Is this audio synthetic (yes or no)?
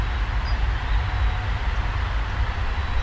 no